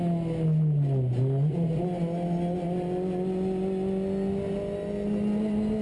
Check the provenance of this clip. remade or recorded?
recorded